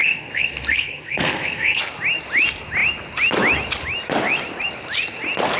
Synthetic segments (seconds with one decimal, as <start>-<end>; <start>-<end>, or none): 0.0-1.8